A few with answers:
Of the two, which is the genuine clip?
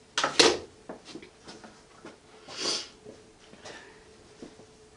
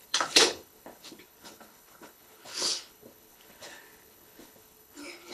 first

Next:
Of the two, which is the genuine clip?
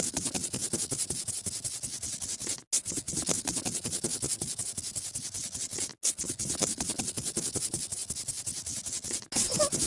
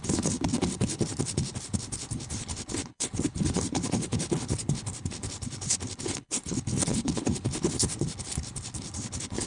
first